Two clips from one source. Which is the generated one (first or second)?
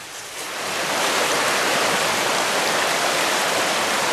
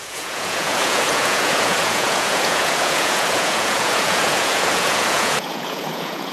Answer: second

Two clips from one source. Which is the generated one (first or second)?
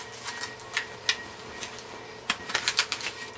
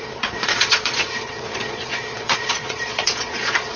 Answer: second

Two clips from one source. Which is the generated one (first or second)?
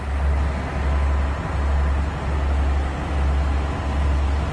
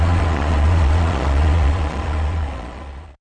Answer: second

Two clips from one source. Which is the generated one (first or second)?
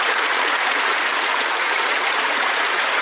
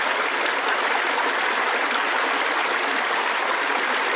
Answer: first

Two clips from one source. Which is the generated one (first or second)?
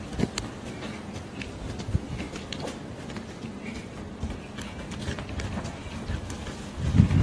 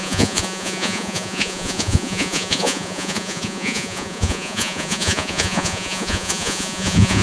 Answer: second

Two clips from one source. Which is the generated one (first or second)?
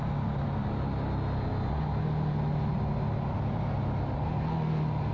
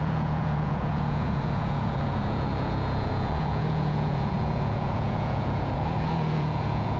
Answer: second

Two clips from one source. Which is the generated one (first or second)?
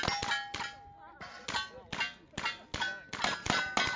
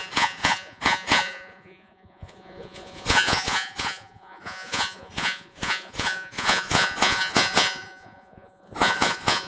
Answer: second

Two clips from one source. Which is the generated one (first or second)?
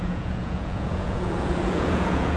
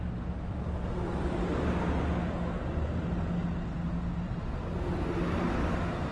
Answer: first